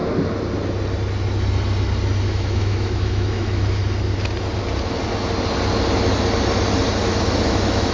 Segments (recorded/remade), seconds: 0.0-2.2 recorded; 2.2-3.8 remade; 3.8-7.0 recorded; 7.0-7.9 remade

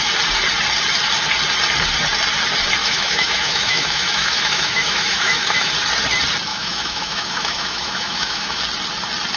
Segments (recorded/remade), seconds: 0.0-2.8 recorded; 2.8-5.7 remade; 5.7-6.5 recorded; 6.5-8.6 remade; 8.6-9.4 recorded

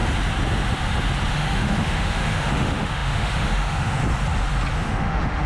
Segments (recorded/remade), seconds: 0.0-1.3 recorded; 1.3-4.0 remade; 4.0-4.7 recorded; 4.7-5.5 remade